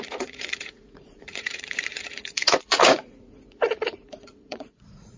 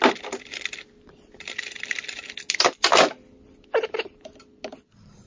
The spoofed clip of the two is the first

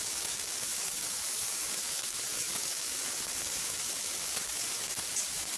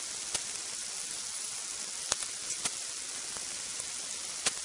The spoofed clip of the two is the first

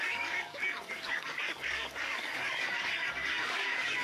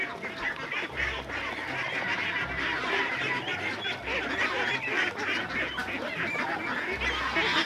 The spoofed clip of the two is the first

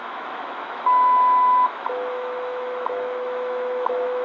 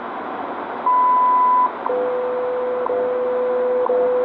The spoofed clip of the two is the first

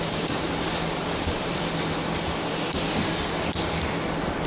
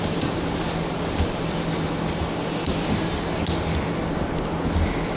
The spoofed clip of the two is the first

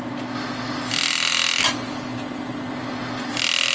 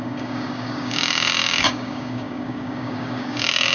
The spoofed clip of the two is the second